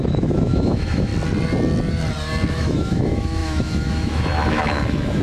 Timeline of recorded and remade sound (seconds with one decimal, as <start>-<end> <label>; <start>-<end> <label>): 0.0-1.1 remade; 1.1-2.5 recorded; 2.5-5.2 remade